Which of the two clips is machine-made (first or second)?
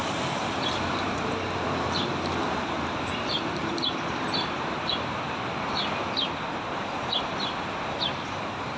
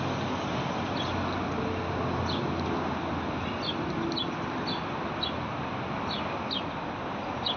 first